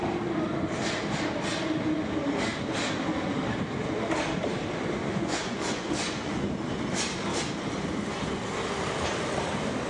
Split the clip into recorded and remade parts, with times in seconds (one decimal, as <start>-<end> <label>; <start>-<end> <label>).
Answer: 0.0-5.0 recorded; 5.0-6.5 remade; 6.5-9.9 recorded